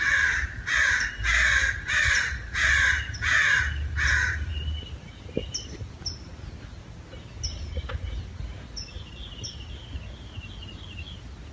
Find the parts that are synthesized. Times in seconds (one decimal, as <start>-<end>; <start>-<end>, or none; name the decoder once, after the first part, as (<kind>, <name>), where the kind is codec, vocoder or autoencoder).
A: none